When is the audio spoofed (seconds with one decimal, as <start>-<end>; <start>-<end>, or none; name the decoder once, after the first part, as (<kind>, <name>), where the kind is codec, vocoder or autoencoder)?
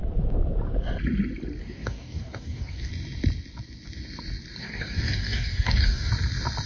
1.6-2.9 (codec, DAC); 4.6-6.1